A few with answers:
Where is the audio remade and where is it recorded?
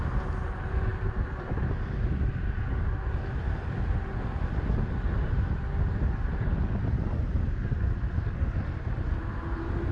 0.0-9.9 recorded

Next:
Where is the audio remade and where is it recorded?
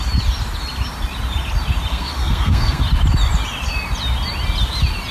0.0-1.9 recorded; 1.9-2.8 remade; 2.8-5.1 recorded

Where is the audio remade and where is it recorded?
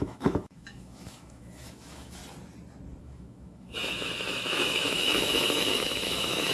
0.0-2.2 remade; 2.2-3.0 recorded; 3.0-6.5 remade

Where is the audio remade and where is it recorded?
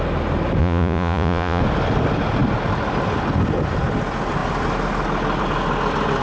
0.0-0.6 recorded; 0.6-1.6 remade; 1.6-6.2 recorded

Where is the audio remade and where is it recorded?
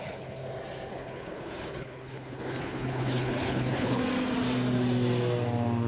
0.0-0.4 remade; 0.4-0.9 recorded; 0.9-4.0 remade; 4.0-5.9 recorded